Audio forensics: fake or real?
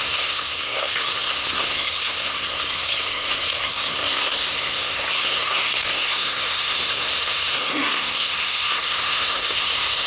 fake